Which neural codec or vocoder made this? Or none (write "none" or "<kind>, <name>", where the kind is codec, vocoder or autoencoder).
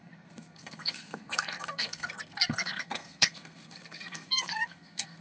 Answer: codec, SNAC